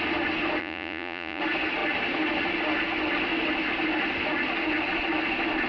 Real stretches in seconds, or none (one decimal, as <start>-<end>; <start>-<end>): 0.0-0.6; 1.4-5.7